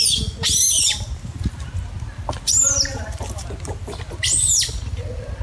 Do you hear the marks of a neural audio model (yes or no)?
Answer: no